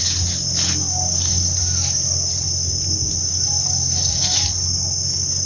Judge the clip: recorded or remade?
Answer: recorded